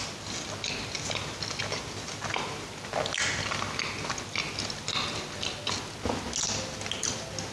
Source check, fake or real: real